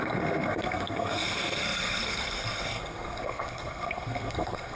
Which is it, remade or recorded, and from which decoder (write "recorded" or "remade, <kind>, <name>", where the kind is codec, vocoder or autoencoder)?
remade, codec, SNAC